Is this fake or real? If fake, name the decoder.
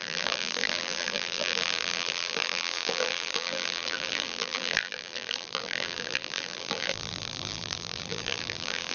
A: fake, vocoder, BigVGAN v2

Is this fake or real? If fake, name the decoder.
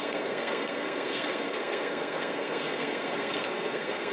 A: fake, codec, SNAC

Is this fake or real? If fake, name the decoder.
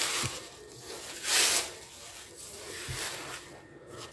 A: real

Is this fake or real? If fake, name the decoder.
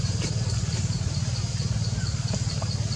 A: real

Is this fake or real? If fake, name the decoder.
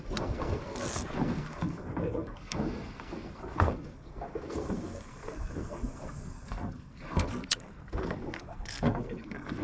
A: fake, codec, SNAC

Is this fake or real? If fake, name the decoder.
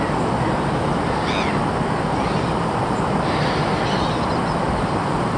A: real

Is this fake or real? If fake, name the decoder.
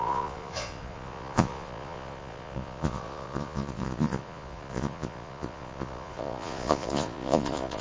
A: fake, vocoder, Vocos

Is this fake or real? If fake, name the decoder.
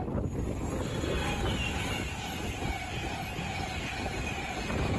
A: real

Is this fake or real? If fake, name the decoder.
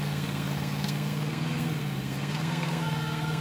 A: fake, codec, SNAC